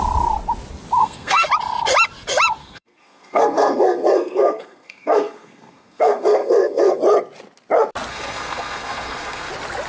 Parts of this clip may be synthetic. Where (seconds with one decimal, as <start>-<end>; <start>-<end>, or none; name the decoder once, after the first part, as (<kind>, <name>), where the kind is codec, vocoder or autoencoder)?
1.0-1.5 (codec, SNAC); 2.6-7.0; 8.1-9.5